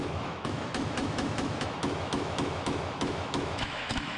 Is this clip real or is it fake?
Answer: fake